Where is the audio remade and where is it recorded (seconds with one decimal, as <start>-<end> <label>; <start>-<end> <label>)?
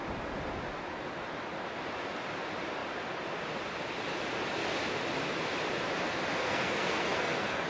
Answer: 0.0-6.4 recorded; 6.4-7.7 remade